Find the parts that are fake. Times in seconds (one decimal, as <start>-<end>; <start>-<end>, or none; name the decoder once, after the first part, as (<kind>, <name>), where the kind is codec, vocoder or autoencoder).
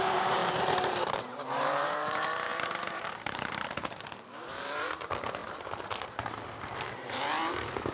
0.0-5.4 (vocoder, BigVGAN v2)